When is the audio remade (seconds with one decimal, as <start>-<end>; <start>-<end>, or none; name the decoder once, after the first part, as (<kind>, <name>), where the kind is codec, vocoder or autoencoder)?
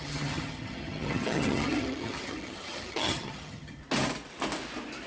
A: 0.0-3.8 (vocoder, HiFi-GAN)